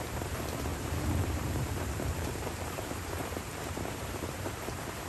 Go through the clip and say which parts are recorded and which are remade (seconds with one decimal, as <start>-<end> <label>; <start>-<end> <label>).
0.0-5.1 remade

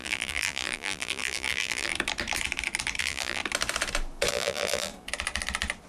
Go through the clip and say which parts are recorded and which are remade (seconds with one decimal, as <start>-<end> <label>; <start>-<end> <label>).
0.0-1.9 remade; 1.9-3.0 recorded; 3.0-3.4 remade; 3.4-4.3 recorded; 4.3-4.9 remade; 4.9-5.9 recorded